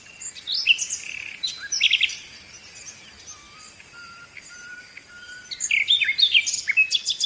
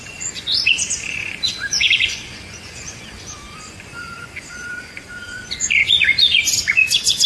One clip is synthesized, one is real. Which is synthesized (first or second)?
second